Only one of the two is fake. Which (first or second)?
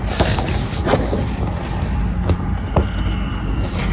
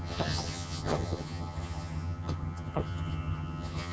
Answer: second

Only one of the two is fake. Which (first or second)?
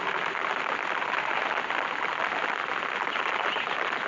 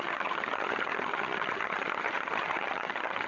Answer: second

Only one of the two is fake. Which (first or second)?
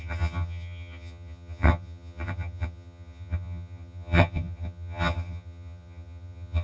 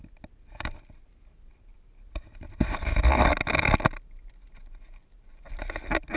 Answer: first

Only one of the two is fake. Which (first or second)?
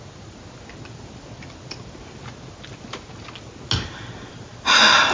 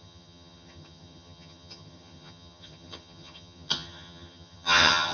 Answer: second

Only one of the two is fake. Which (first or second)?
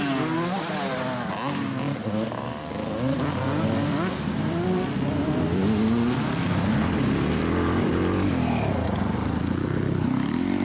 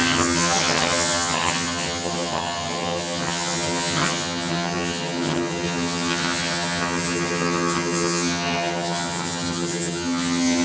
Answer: second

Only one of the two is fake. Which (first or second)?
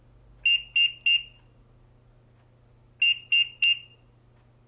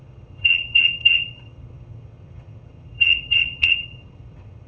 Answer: second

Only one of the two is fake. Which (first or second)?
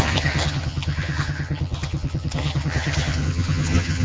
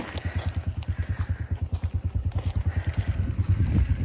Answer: first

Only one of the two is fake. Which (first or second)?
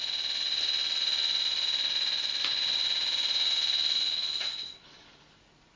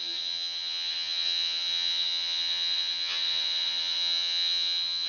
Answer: second